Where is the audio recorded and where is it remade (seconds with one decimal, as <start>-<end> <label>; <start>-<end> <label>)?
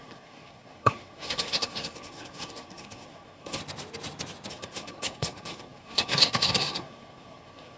0.0-3.6 remade; 3.6-4.5 recorded; 4.5-7.8 remade